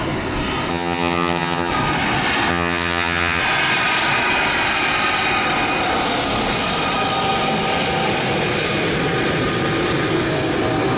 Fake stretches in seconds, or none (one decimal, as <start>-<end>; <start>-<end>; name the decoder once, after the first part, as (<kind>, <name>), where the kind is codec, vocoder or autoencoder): 0.7-1.7 (vocoder, HiFi-GAN); 2.5-3.4